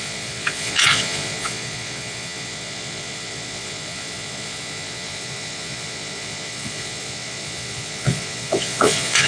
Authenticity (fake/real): fake